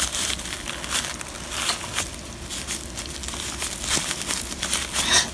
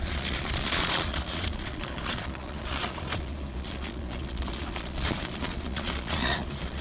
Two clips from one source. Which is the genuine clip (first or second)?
first